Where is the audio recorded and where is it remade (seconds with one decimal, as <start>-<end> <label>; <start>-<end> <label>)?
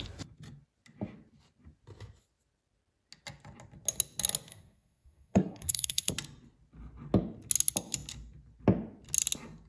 0.0-4.5 recorded; 4.5-6.1 remade; 6.1-9.7 recorded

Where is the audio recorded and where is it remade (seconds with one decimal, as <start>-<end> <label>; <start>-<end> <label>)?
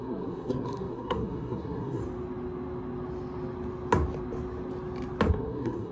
0.0-2.0 remade; 2.0-5.3 recorded; 5.3-5.9 remade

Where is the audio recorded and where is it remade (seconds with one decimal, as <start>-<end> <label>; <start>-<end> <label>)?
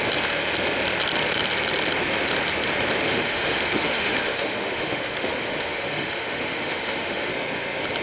0.0-3.1 recorded; 3.1-7.3 remade; 7.3-8.0 recorded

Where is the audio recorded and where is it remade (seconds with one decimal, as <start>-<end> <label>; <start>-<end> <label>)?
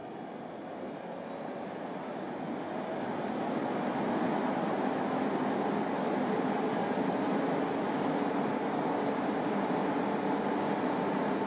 0.0-8.5 recorded; 8.5-11.5 remade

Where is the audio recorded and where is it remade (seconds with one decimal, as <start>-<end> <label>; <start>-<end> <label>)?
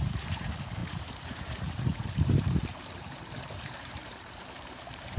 0.0-5.2 remade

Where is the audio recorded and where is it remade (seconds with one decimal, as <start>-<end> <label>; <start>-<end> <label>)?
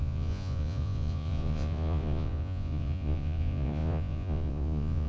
0.0-5.1 remade